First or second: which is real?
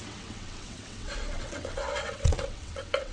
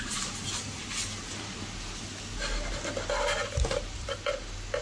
second